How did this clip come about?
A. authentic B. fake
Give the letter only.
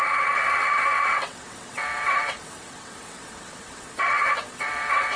B